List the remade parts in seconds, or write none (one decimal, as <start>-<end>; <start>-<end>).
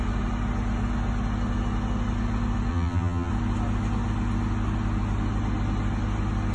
2.7-3.3